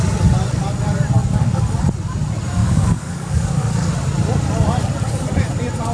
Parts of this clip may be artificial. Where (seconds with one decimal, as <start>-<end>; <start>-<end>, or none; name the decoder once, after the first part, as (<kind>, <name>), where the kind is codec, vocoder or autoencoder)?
1.2-1.8 (codec, DAC); 2.6-3.9